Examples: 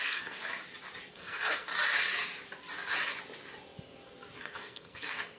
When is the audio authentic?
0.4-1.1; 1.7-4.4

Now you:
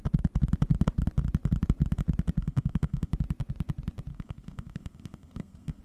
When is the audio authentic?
0.0-2.4; 3.1-4.1

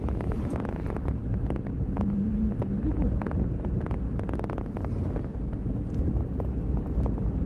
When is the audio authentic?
2.6-7.5

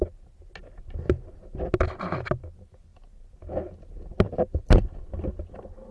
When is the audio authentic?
0.0-5.9

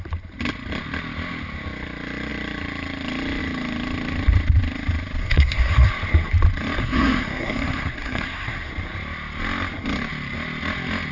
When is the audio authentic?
0.0-5.2; 5.9-6.8; 8.7-11.1